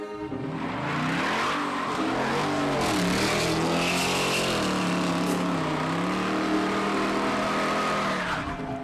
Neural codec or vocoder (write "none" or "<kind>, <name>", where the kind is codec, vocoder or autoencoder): none